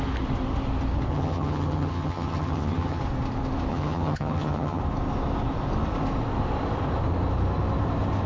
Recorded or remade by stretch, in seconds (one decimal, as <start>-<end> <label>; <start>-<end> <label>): 0.0-1.1 recorded; 1.1-3.0 remade; 3.0-3.7 recorded; 3.7-4.8 remade; 4.8-8.3 recorded